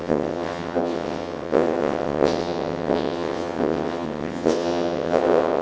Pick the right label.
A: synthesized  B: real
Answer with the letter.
A